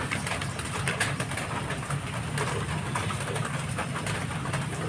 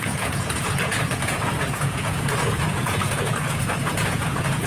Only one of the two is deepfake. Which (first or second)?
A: second